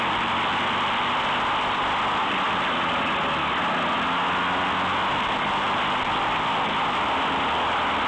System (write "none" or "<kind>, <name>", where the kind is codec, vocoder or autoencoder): none